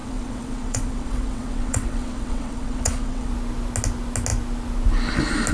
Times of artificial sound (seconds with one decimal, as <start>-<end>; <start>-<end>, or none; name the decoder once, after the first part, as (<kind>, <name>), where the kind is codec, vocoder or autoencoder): 0.0-3.3 (vocoder, WaveNeXt)